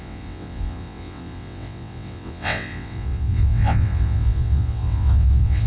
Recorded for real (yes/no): no